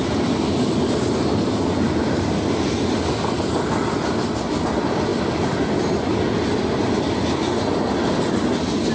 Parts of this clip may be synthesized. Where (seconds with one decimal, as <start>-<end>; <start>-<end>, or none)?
none